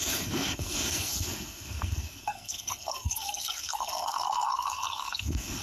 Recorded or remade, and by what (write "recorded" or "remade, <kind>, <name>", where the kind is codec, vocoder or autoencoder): remade, codec, SNAC